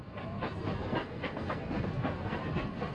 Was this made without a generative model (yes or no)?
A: no